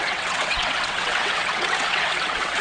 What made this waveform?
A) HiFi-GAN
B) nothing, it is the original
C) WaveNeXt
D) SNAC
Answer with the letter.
C